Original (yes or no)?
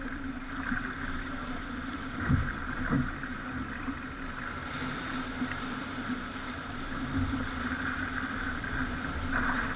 no